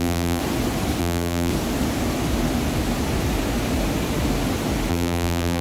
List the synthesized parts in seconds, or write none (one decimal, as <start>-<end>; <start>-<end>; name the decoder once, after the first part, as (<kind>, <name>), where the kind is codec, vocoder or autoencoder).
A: 0.0-0.4 (vocoder, BigVGAN v2); 1.0-1.5; 4.9-5.6